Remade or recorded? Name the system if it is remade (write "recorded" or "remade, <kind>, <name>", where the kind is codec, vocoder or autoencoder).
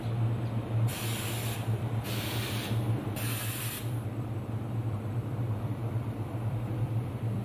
remade, vocoder, BigVGAN v2